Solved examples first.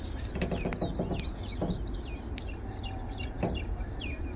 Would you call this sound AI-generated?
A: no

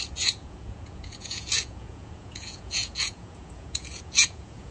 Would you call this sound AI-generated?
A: yes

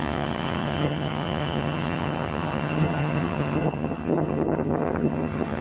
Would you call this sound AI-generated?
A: yes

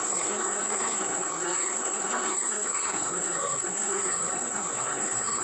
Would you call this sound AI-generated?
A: yes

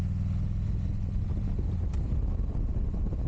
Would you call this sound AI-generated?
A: no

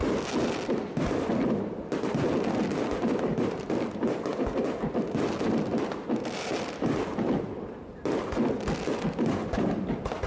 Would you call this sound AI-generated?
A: no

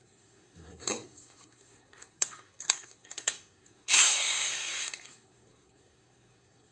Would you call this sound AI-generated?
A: yes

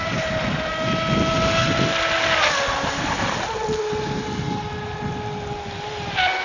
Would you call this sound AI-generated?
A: no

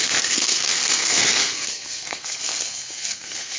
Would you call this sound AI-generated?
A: yes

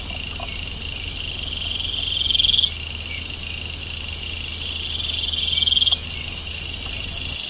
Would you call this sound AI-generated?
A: no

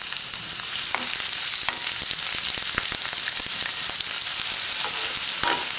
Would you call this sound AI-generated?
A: no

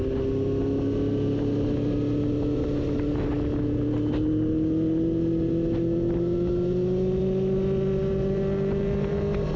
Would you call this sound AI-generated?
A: no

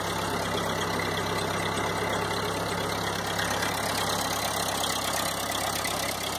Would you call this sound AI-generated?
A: no